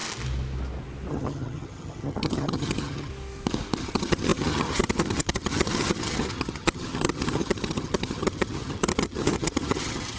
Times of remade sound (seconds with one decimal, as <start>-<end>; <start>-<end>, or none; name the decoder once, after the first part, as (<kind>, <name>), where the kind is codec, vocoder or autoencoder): 1.1-3.1 (vocoder, HiFi-GAN); 3.8-10.2